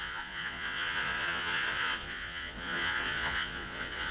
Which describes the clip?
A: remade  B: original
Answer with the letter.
A